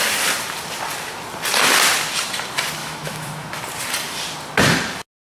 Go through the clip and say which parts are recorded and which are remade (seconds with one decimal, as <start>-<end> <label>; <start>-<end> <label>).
0.0-2.8 recorded; 2.8-3.6 remade; 3.6-5.3 recorded